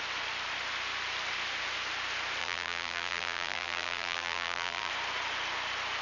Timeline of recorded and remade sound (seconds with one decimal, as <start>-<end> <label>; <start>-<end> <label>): 0.0-2.4 recorded; 2.4-4.9 remade; 4.9-6.0 recorded